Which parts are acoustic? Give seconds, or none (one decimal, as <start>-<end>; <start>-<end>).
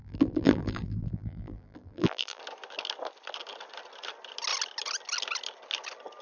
2.4-6.2